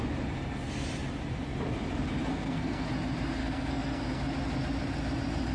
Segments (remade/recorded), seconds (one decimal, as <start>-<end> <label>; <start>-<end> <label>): 0.0-2.3 recorded; 2.3-2.9 remade; 2.9-3.4 recorded; 3.4-4.2 remade; 4.2-5.5 recorded